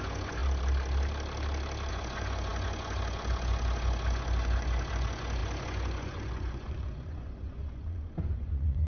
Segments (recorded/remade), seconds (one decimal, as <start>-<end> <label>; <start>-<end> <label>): 0.0-0.4 remade; 0.4-1.9 recorded; 1.9-8.9 remade